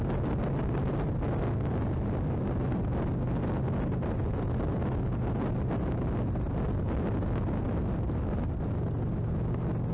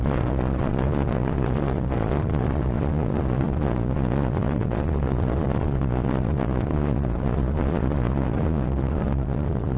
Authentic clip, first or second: first